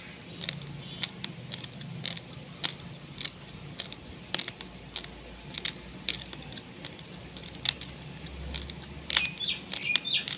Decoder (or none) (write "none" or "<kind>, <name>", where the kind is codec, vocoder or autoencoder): none